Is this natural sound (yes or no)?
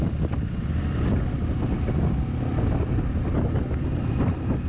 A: yes